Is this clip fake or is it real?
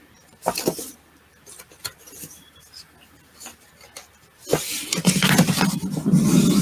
real